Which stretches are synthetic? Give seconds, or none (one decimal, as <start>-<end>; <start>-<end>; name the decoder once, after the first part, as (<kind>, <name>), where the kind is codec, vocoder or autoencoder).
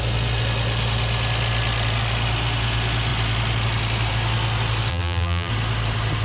4.9-5.5 (vocoder, BigVGAN v2)